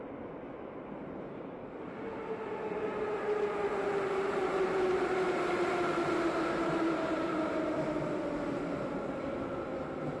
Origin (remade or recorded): recorded